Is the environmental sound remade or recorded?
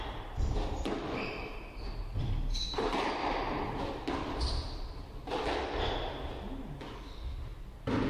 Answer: recorded